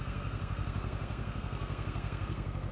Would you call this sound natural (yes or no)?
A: no